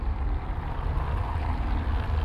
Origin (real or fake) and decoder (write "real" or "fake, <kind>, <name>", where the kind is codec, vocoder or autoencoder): real